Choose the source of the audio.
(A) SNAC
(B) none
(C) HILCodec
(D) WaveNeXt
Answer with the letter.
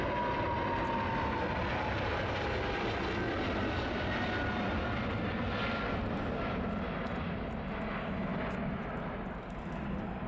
B